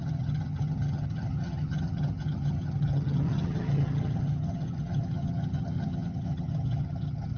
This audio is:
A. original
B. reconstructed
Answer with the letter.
B